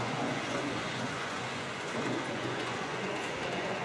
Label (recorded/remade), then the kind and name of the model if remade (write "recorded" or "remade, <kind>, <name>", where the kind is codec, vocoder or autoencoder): remade, vocoder, Vocos